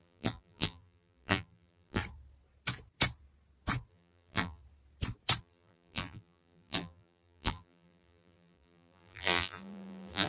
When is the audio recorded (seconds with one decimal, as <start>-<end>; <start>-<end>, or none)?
2.0-3.9; 4.6-5.4